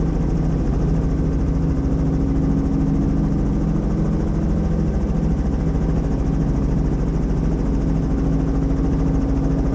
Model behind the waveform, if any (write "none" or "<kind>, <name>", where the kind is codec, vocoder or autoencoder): none